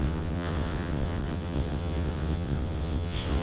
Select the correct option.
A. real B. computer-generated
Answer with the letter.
B